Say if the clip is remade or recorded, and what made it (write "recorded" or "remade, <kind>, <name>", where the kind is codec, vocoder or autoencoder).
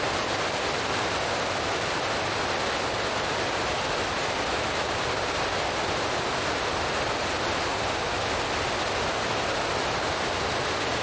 recorded